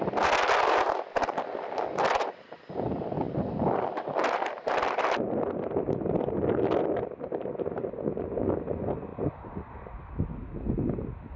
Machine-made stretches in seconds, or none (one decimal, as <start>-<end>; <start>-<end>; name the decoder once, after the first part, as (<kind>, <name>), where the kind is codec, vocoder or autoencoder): 3.6-7.8 (vocoder, BigVGAN v2)